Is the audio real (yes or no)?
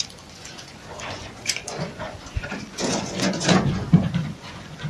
no